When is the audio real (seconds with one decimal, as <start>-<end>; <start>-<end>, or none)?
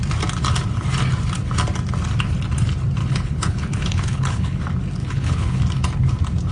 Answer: 0.0-3.0; 4.6-5.0; 5.6-6.5